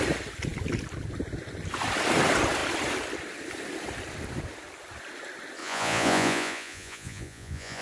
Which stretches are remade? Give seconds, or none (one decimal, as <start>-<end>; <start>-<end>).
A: 5.6-7.8